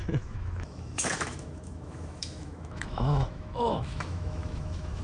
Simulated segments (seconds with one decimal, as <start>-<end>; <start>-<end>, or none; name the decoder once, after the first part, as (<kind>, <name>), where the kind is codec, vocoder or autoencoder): 0.0-5.0 (autoencoder, DAC-VAE)